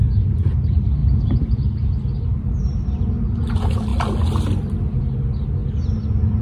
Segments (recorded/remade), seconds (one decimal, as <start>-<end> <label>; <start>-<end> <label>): 0.0-1.0 recorded; 1.0-1.6 remade; 1.6-6.4 recorded